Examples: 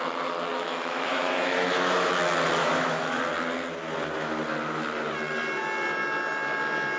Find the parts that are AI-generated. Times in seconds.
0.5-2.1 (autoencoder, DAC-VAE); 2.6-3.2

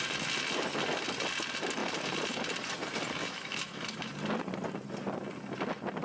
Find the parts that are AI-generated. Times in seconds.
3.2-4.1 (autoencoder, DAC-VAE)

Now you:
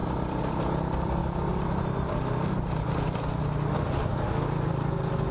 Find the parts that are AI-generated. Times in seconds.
none

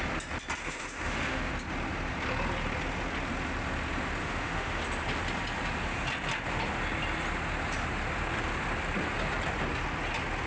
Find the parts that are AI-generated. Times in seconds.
0.6-1.5 (autoencoder, DAC-VAE); 4.2-4.8